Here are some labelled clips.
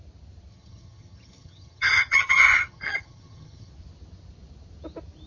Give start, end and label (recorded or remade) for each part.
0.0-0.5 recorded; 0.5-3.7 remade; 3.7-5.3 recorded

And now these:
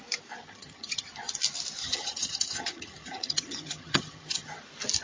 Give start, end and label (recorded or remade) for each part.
0.0-0.4 recorded; 0.4-1.1 remade; 1.1-1.8 recorded; 1.8-4.5 remade; 4.5-5.0 recorded

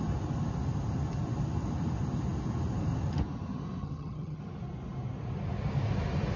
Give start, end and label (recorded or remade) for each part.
0.0-3.8 recorded; 3.8-4.4 remade; 4.4-6.4 recorded

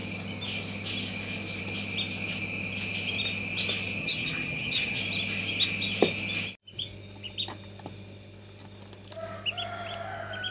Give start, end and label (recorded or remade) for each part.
0.0-4.0 recorded; 4.0-5.0 remade; 5.0-10.5 recorded

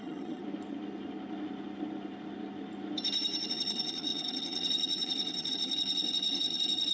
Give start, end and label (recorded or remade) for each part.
0.0-0.4 remade; 0.4-3.5 recorded; 3.5-6.9 remade